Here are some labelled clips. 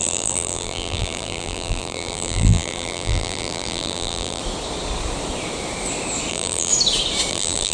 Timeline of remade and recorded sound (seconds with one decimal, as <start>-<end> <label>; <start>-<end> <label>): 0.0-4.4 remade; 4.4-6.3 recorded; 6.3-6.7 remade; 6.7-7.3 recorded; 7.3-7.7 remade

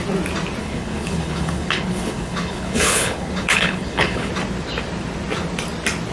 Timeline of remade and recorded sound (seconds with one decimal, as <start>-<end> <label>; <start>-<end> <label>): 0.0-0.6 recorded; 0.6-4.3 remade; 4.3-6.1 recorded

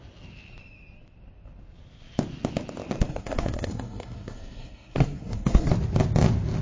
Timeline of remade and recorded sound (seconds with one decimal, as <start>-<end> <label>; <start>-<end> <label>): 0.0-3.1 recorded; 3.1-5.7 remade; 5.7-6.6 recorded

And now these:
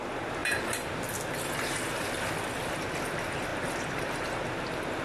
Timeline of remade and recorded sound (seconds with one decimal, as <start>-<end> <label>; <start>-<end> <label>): 0.0-5.0 recorded

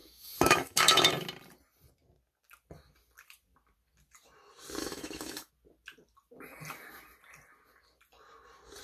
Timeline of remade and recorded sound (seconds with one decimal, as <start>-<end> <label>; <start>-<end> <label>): 0.0-1.1 remade; 1.1-4.8 recorded; 4.8-5.5 remade; 5.5-8.8 recorded